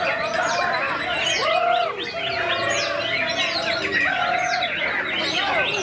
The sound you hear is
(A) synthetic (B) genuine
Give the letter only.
B